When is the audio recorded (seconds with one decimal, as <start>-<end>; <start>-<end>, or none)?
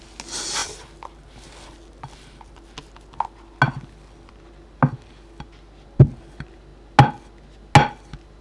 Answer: 0.0-8.4